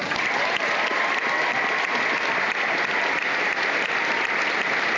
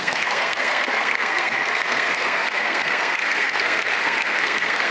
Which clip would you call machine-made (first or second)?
second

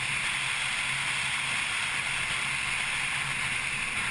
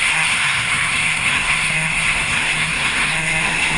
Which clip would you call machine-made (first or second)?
second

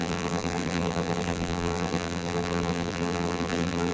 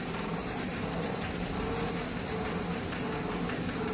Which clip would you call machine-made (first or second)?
first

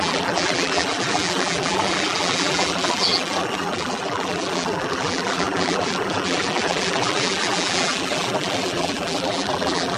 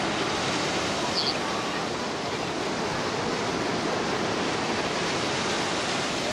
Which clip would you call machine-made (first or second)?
first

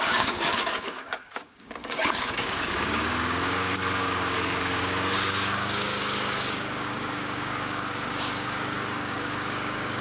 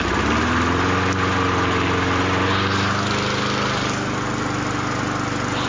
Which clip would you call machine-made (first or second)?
first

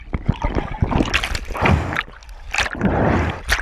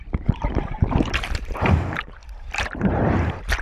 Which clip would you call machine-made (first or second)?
second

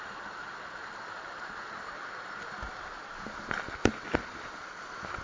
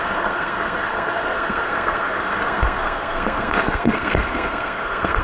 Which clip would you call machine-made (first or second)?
second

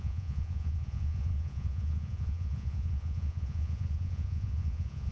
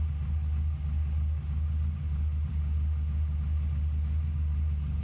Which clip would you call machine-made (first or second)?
first